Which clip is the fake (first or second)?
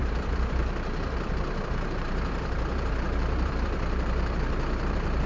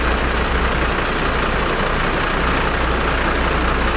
first